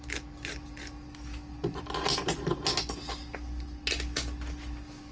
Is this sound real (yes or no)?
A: yes